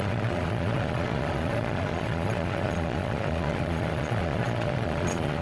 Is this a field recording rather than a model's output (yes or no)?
no